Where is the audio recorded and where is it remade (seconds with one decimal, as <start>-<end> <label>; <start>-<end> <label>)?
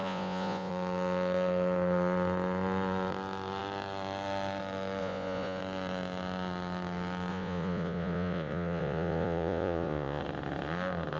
0.0-0.7 remade; 0.7-5.0 recorded; 5.0-5.6 remade; 5.6-7.3 recorded; 7.3-10.2 remade; 10.2-11.2 recorded